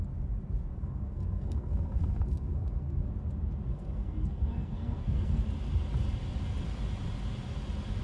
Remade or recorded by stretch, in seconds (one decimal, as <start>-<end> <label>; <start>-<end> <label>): 0.0-0.7 recorded; 0.7-3.1 remade; 3.1-3.7 recorded; 3.7-5.4 remade; 5.4-8.0 recorded